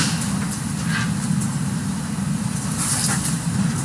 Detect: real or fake real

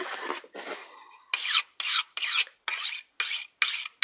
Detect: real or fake real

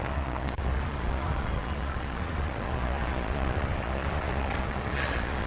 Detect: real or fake fake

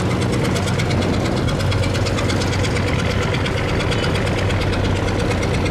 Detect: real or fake real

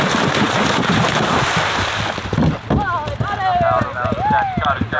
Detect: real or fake real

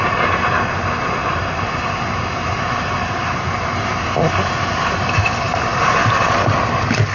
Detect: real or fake real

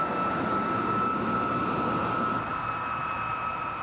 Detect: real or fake real